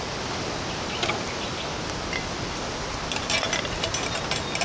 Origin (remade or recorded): recorded